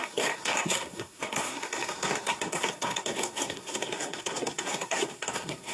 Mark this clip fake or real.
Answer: fake